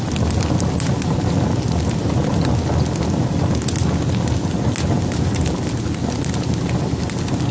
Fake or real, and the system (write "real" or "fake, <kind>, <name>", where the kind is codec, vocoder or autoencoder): real